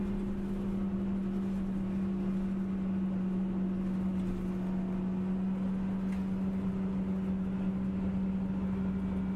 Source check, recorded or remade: recorded